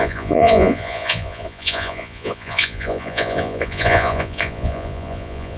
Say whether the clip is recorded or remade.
remade